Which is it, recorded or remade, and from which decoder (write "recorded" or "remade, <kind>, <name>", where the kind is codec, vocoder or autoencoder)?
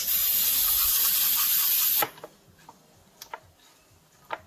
recorded